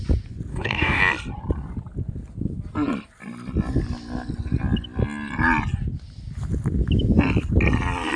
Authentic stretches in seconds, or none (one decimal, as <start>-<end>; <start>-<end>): 0.0-0.5; 1.0-8.2